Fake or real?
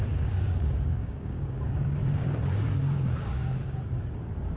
fake